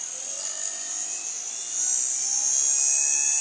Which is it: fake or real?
real